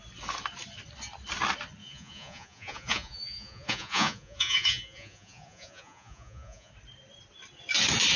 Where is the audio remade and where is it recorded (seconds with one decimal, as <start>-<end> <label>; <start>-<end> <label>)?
0.0-1.8 recorded; 1.8-6.7 remade; 6.7-8.2 recorded